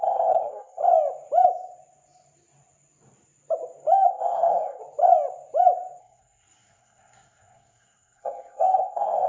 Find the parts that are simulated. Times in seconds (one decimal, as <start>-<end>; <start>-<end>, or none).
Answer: 0.0-0.8; 4.1-4.8; 6.0-9.3

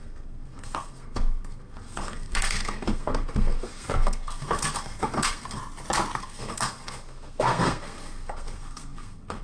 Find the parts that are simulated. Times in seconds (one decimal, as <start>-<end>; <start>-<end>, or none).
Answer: 0.0-5.6; 6.2-9.4